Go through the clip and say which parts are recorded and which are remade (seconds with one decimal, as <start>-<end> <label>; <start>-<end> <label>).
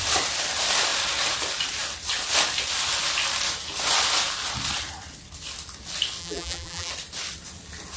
0.0-6.2 recorded; 6.2-6.9 remade; 6.9-8.0 recorded